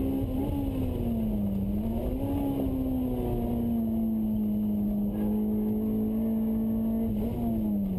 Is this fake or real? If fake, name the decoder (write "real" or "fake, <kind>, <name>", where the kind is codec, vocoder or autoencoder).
real